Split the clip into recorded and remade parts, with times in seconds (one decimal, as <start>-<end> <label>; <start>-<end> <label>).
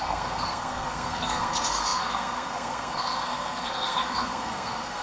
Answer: 0.0-5.0 remade